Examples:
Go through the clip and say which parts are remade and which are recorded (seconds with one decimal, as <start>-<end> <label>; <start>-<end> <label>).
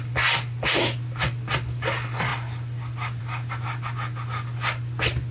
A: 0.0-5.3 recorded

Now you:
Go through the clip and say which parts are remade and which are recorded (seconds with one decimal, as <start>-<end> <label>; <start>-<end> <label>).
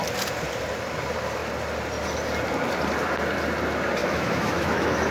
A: 0.0-4.0 recorded; 4.0-5.1 remade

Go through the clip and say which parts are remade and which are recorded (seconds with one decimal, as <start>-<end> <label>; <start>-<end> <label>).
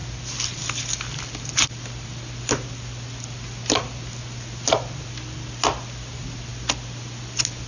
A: 0.0-7.7 recorded